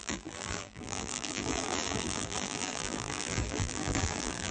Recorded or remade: remade